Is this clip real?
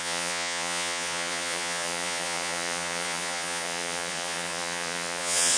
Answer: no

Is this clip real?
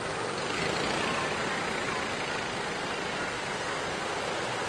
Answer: yes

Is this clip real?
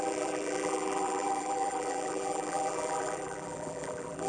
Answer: no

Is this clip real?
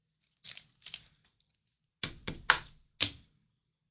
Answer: yes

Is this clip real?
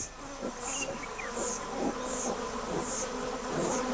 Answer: yes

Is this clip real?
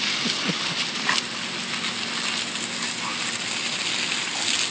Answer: yes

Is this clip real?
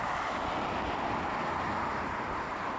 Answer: yes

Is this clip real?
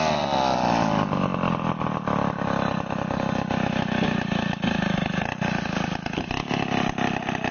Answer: yes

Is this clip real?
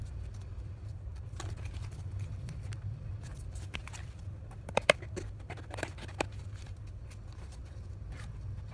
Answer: no